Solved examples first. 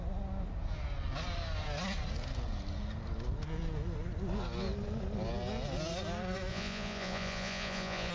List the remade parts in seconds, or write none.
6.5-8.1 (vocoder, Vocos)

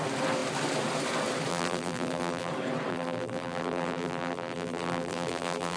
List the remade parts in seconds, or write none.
1.5-2.5 (vocoder, BigVGAN v2); 2.9-5.8

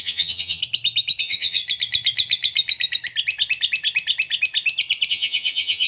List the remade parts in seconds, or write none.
0.0-0.6 (vocoder, HiFi-GAN); 1.2-1.6; 5.1-5.9

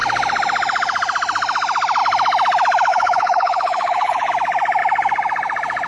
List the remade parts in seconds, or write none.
2.9-4.3 (codec, HILCodec)

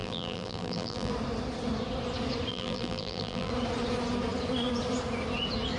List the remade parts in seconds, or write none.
0.0-1.1 (vocoder, BigVGAN v2); 2.5-3.5

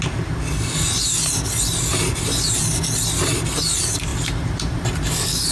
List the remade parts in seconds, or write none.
1.9-2.6 (vocoder, BigVGAN v2); 4.1-5.1